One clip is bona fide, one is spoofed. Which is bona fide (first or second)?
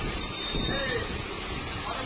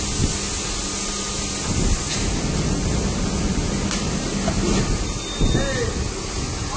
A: second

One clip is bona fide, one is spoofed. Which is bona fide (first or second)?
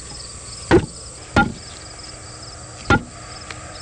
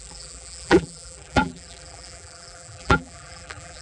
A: first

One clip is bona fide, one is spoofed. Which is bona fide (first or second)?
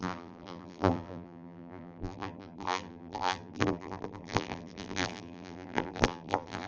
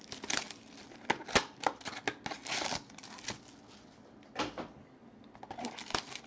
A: second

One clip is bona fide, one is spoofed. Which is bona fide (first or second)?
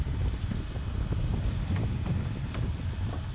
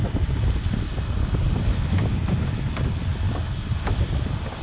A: first